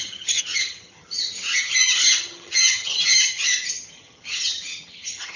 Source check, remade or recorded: remade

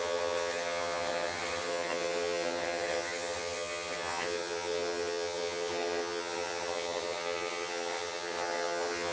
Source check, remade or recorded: remade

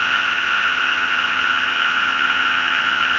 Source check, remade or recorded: remade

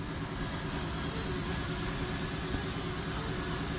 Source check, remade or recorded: recorded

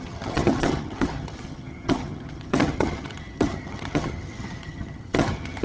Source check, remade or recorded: remade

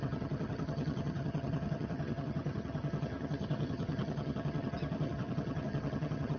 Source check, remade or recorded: remade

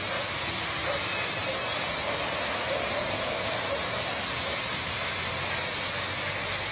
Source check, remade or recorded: recorded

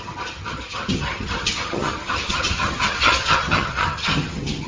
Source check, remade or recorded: remade